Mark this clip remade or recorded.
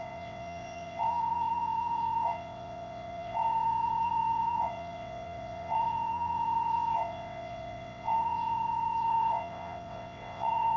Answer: remade